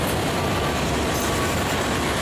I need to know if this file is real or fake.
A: real